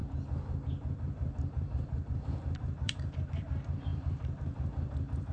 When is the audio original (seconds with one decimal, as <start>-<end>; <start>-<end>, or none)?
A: none